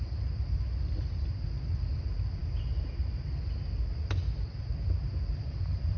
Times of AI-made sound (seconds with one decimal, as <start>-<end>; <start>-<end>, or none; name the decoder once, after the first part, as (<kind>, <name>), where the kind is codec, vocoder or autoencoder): none

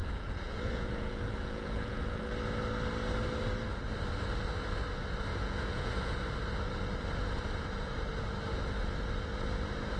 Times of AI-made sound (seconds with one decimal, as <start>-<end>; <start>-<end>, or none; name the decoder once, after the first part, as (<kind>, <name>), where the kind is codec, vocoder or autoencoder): 0.0-2.2 (vocoder, Vocos); 5.3-6.2